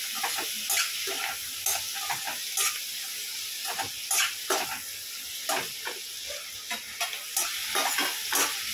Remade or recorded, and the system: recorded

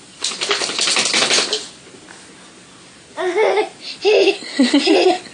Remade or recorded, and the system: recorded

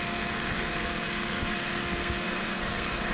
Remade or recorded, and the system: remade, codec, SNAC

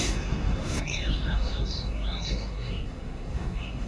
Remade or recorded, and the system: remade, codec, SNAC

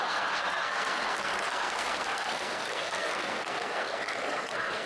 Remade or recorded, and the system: remade, codec, SNAC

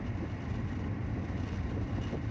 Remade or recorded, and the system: recorded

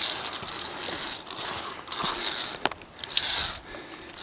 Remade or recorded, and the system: recorded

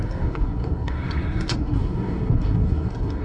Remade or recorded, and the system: remade, codec, SNAC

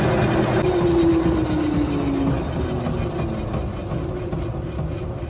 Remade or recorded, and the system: recorded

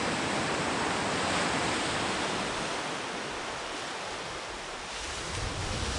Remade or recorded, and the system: recorded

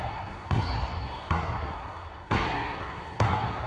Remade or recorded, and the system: remade, codec, SNAC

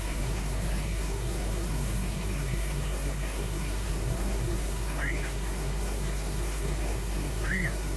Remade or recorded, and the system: remade, codec, SNAC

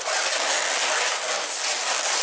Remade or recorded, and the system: recorded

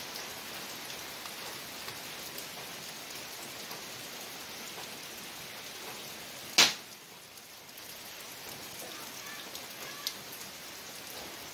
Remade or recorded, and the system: recorded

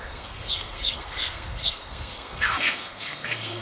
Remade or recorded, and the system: remade, codec, SNAC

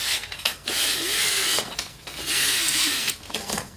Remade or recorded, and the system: remade, codec, SNAC